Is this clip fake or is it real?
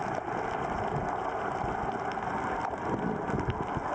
real